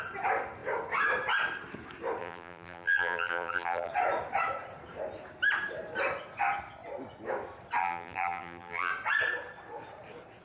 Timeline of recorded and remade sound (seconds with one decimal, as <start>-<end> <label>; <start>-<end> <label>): 0.0-2.2 recorded; 2.2-3.9 remade; 3.9-7.8 recorded; 7.8-8.9 remade; 8.9-10.4 recorded